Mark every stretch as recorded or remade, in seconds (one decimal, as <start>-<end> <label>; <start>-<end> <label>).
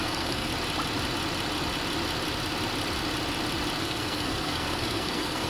0.0-0.5 remade; 0.5-3.8 recorded; 3.8-5.5 remade